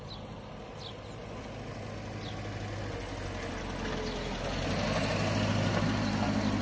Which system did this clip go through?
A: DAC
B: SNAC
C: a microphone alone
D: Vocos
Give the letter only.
C